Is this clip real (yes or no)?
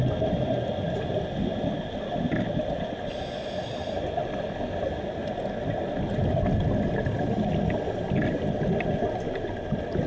yes